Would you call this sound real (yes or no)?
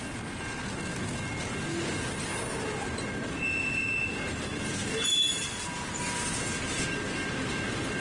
yes